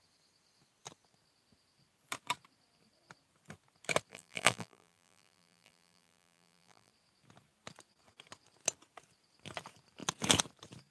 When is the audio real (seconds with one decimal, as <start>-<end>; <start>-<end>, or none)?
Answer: 0.0-4.1; 6.9-10.9